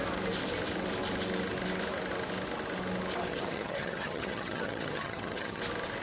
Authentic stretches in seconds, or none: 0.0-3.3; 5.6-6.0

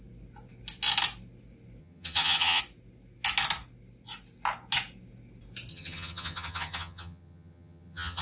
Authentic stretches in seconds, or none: 0.0-1.8; 2.6-5.7

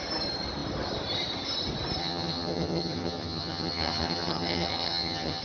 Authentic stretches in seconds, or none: 0.0-2.0

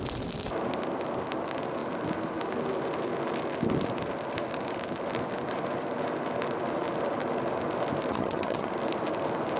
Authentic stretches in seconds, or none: 0.0-8.1; 8.7-9.6

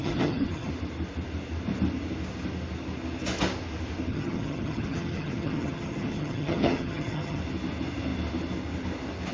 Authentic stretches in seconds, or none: 0.7-4.1; 7.4-9.3